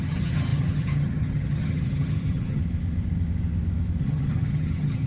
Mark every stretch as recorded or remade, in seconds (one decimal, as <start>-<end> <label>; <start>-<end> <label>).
0.0-2.6 remade; 2.6-4.0 recorded; 4.0-5.1 remade